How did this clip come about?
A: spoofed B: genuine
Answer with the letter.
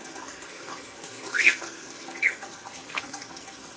A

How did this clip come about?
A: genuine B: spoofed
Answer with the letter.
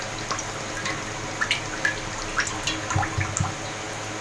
A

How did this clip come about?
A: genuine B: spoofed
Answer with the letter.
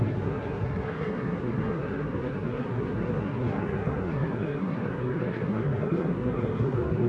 B